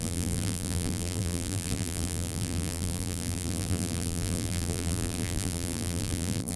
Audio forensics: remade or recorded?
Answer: remade